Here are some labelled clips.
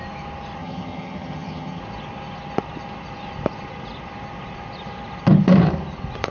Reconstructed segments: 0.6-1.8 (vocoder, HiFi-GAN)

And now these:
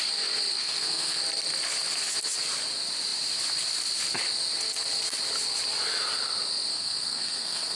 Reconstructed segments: 0.6-1.2 (codec, SNAC); 6.7-7.8

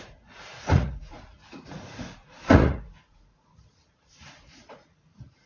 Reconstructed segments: 0.0-5.5 (vocoder, Vocos)

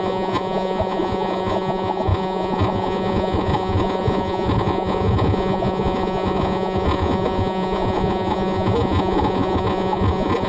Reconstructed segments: 0.0-10.5 (vocoder, Vocos)